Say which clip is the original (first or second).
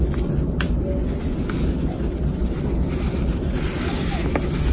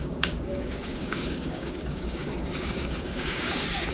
first